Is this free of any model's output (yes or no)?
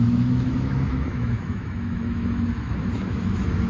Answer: no